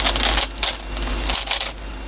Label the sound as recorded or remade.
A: recorded